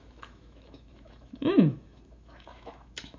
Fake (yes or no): yes